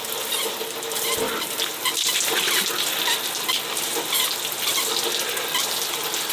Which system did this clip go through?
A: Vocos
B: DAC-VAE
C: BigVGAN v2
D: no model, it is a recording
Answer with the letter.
D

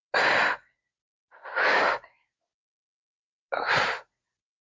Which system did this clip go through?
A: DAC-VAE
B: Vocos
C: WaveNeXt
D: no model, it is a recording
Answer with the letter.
D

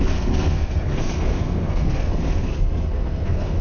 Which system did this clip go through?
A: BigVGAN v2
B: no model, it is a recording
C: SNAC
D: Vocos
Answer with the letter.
C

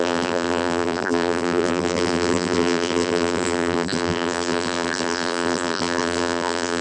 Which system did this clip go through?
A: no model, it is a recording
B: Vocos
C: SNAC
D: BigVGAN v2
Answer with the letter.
D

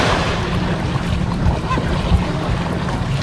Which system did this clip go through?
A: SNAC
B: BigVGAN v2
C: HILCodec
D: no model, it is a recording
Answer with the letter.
B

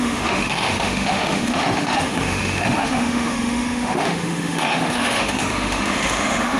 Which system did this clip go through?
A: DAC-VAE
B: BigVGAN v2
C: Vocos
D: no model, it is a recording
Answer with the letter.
A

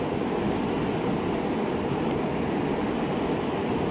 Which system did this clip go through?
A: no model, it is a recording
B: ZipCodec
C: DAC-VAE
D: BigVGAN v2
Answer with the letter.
A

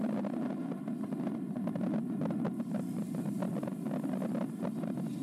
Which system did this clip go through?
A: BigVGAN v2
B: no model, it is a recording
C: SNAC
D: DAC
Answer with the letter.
B